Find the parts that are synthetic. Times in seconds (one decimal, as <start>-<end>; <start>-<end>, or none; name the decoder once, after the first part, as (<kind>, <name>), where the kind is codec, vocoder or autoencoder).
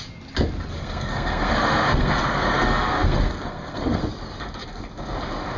0.8-4.0 (codec, SNAC)